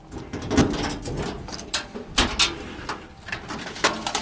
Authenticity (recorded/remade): recorded